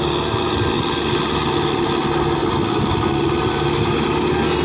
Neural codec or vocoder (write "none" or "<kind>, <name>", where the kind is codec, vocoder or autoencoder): none